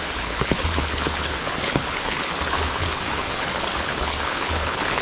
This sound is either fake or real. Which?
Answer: fake